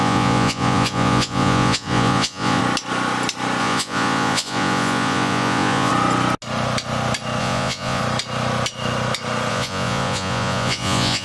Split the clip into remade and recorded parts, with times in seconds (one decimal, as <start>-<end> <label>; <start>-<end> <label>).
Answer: 0.0-2.6 remade; 2.6-3.6 recorded; 3.6-5.9 remade; 5.9-7.4 recorded; 7.4-8.0 remade; 8.0-9.5 recorded; 9.5-11.2 remade